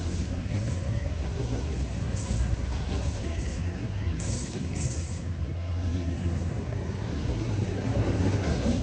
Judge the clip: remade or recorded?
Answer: remade